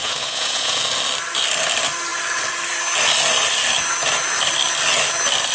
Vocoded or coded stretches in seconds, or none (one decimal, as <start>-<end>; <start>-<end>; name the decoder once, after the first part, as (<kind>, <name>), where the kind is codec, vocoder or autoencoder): 0.0-0.8 (vocoder, Vocos)